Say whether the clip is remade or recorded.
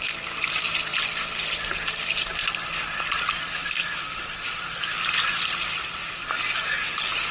recorded